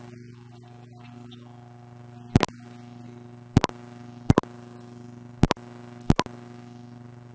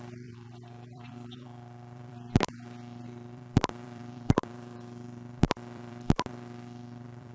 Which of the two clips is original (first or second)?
first